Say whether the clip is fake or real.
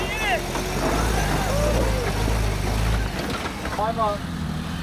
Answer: real